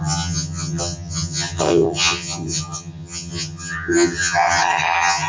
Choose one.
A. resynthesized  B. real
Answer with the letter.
A